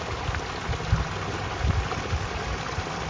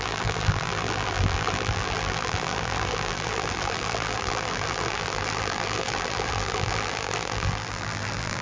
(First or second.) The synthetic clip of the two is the second